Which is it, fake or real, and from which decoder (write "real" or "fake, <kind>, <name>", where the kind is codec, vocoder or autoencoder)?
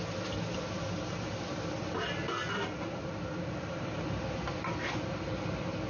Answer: real